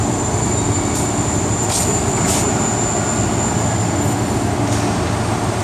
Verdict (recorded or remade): recorded